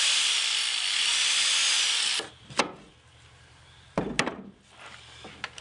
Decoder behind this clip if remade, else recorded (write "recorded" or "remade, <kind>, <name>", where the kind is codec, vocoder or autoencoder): recorded